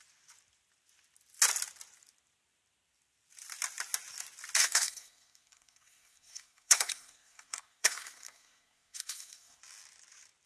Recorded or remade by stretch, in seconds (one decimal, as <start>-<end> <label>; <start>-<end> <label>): 0.0-4.6 recorded; 4.6-9.6 remade; 9.6-10.5 recorded